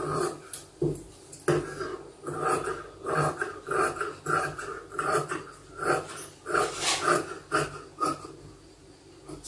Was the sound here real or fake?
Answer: real